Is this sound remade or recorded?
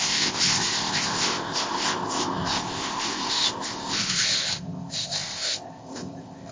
remade